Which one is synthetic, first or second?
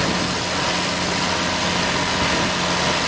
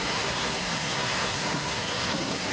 second